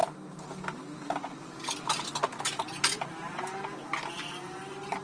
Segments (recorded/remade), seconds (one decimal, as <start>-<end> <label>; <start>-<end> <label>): 0.0-5.0 recorded